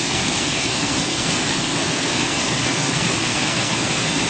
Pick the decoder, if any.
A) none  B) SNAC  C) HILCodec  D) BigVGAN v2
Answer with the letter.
B